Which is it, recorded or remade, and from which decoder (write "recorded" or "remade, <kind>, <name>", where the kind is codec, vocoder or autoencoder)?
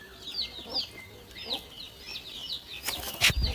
recorded